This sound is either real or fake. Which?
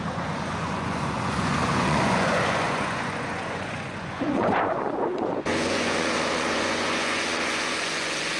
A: fake